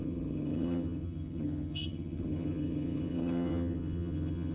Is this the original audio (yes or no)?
no